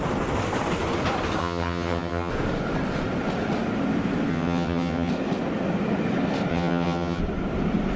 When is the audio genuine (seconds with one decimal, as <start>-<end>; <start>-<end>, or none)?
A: 0.0-1.4; 2.3-4.3; 5.1-6.5; 7.2-8.0